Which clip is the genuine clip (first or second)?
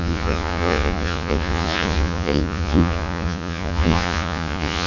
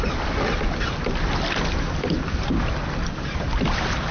second